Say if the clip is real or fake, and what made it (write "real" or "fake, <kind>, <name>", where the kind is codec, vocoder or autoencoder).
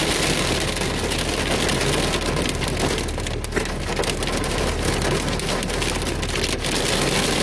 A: real